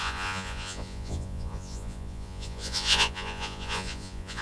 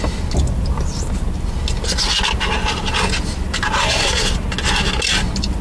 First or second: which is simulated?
first